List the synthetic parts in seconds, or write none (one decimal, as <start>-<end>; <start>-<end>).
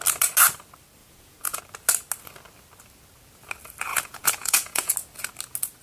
1.0-1.6; 3.9-4.9